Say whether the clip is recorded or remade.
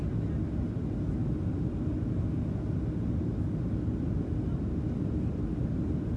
recorded